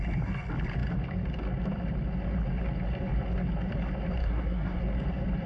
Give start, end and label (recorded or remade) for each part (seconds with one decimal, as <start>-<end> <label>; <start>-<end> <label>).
0.0-4.2 recorded; 4.2-4.8 remade; 4.8-5.5 recorded